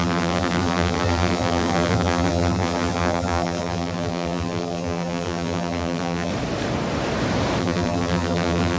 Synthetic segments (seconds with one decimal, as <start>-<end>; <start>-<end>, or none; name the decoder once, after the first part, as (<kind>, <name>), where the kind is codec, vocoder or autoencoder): 0.0-6.3 (vocoder, BigVGAN v2); 7.6-8.8